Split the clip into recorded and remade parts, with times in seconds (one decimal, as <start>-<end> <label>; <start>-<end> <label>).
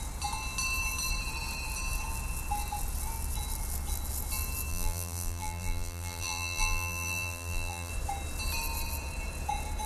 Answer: 0.0-4.7 recorded; 4.7-7.9 remade; 7.9-9.9 recorded